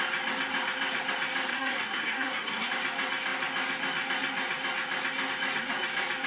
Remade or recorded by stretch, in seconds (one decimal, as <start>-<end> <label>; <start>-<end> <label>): 0.0-1.5 recorded; 1.5-2.7 remade; 2.7-6.3 recorded